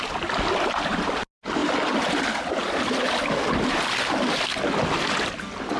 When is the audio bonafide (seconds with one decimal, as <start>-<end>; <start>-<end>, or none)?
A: 0.0-5.8

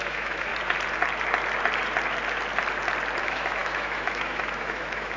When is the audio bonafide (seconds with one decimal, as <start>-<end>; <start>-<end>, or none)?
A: 0.5-3.2

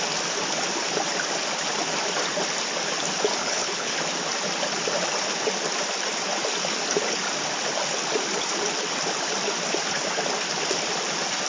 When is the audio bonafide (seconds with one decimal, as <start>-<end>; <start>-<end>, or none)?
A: 0.0-3.4; 4.0-11.5

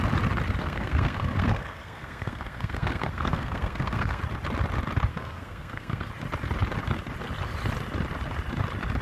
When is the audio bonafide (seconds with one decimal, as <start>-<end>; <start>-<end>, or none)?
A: 0.0-0.6; 4.2-5.1; 6.1-9.0